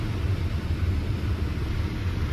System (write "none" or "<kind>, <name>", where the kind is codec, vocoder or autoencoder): none